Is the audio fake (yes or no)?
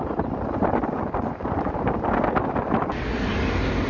no